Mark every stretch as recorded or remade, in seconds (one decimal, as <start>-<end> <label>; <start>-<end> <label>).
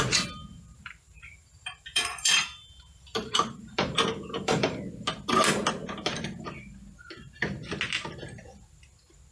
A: 0.0-0.5 recorded; 0.5-4.8 remade; 4.8-9.3 recorded